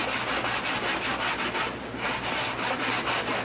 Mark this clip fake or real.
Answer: real